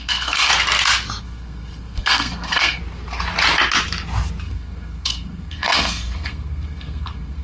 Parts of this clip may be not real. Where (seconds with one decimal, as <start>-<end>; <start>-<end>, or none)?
0.0-0.5; 1.2-2.8; 4.4-7.4